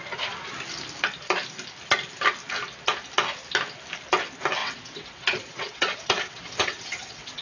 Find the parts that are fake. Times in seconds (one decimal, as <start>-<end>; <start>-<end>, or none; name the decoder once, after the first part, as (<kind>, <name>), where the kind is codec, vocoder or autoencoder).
4.6-7.4 (vocoder, WaveNeXt)